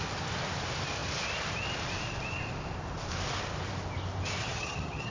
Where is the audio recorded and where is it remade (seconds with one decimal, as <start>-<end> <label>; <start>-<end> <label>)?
0.0-4.4 recorded; 4.4-5.1 remade

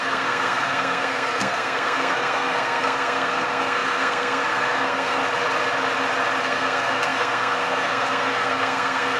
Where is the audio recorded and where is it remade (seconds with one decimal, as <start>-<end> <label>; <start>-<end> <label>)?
0.0-5.2 remade; 5.2-6.4 recorded; 6.4-9.2 remade

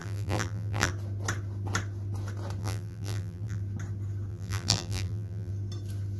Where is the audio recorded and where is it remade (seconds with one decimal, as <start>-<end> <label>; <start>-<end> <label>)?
0.0-0.9 remade; 0.9-2.6 recorded; 2.6-3.6 remade; 3.6-4.3 recorded; 4.3-5.5 remade; 5.5-6.2 recorded

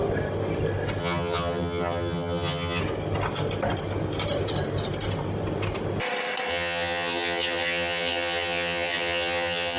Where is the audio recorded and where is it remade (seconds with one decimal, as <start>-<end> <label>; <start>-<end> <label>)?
0.0-1.0 recorded; 1.0-2.8 remade; 2.8-6.5 recorded; 6.5-9.8 remade

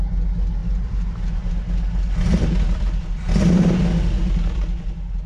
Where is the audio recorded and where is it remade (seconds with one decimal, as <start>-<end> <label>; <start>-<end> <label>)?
0.0-0.6 recorded; 0.6-1.5 remade; 1.5-5.3 recorded

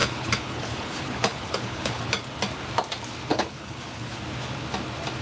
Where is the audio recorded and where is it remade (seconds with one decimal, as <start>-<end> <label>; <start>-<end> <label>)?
0.0-2.1 remade; 2.1-3.3 recorded; 3.3-4.2 remade; 4.2-5.2 recorded

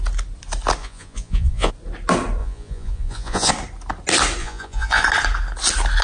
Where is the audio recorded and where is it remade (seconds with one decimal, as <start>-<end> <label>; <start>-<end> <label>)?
0.0-0.8 recorded; 0.8-1.7 remade; 1.7-2.4 recorded; 2.4-3.5 remade; 3.5-4.4 recorded; 4.4-5.0 remade; 5.0-6.0 recorded

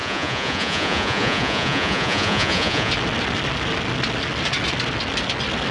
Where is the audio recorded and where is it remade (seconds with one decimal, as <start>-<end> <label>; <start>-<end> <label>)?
0.0-2.9 remade; 2.9-5.7 recorded